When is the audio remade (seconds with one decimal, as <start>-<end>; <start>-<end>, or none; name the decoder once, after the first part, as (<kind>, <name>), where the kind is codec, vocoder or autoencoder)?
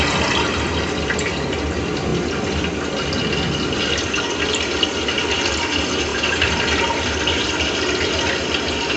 none